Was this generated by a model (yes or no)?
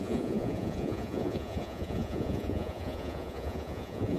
yes